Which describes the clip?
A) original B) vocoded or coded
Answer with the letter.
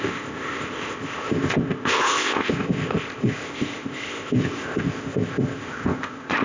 B